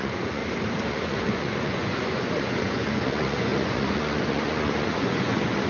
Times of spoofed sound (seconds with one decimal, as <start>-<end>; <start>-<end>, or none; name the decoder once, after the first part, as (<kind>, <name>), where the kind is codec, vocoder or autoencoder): 0.0-0.4 (vocoder, Vocos); 0.9-5.7